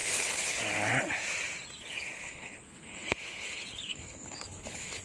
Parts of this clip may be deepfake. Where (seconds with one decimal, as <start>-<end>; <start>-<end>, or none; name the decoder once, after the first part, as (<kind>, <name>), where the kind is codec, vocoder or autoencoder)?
0.0-0.6 (codec, HILCodec); 2.2-5.0